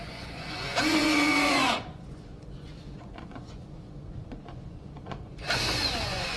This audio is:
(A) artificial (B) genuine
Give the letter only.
A